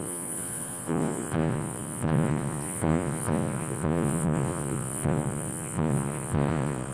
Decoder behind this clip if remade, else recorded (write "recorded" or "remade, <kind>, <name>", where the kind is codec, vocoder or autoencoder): remade, vocoder, Vocos